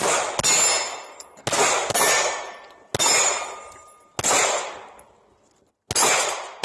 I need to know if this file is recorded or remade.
recorded